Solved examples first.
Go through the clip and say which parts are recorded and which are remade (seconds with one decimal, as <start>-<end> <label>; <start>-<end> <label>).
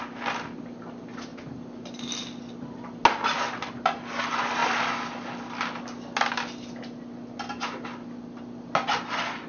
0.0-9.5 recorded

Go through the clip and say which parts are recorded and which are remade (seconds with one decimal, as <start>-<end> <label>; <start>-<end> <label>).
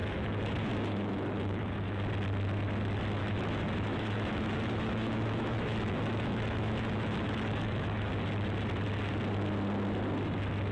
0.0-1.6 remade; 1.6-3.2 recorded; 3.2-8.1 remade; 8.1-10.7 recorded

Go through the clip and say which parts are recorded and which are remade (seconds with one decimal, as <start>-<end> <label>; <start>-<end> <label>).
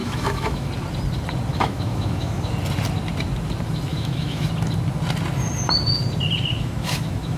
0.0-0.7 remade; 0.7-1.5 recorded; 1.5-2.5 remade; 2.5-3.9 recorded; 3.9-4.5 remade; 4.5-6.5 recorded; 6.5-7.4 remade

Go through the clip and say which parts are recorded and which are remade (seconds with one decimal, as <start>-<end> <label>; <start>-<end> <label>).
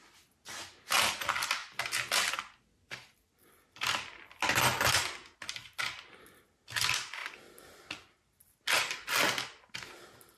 0.0-10.4 recorded